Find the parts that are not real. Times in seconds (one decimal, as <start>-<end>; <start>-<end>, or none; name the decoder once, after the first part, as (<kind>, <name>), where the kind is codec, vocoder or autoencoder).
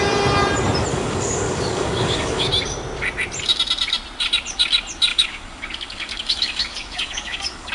0.9-2.5 (codec, DAC); 5.1-7.7